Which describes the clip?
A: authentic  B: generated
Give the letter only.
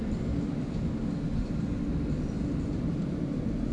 A